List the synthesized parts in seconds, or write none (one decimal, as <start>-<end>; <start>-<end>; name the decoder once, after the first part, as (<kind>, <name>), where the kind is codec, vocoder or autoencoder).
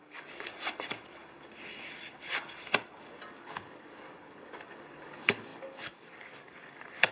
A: 0.0-0.5 (codec, DAC); 3.3-7.1